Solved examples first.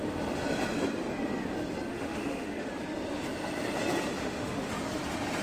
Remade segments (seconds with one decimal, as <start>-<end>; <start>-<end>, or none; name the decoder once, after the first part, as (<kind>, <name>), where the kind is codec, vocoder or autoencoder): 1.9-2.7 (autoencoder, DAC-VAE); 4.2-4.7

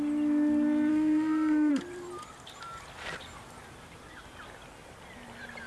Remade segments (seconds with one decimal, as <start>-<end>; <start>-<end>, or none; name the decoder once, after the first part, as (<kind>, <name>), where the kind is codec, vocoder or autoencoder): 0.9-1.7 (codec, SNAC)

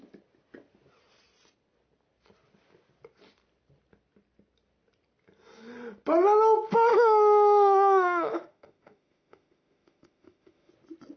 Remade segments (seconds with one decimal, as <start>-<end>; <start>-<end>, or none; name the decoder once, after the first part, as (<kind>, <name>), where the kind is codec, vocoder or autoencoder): 6.9-10.7 (autoencoder, DAC-VAE)